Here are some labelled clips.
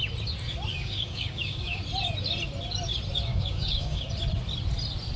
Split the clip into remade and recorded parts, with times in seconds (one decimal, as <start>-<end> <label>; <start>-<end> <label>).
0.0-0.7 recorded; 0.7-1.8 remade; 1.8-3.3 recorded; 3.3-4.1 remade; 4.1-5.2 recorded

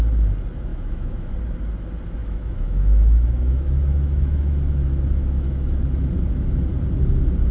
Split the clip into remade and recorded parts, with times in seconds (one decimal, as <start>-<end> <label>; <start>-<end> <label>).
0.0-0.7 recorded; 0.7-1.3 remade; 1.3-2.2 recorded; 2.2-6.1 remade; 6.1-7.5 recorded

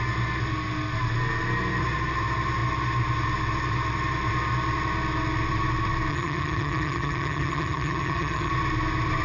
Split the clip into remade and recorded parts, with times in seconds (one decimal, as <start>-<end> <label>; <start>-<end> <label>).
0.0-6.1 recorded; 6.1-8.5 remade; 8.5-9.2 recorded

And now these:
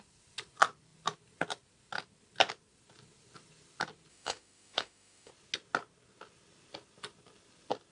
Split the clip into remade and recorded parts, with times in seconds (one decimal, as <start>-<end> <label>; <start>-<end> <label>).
0.0-4.1 recorded; 4.1-5.3 remade; 5.3-7.9 recorded

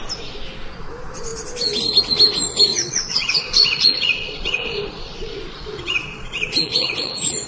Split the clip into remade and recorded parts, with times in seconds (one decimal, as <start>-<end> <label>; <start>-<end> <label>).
0.0-2.7 recorded; 2.7-7.5 remade

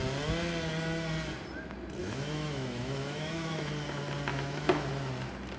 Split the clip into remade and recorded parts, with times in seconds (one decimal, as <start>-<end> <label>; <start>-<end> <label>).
0.0-2.0 recorded; 2.0-3.7 remade; 3.7-4.3 recorded; 4.3-4.9 remade; 4.9-5.6 recorded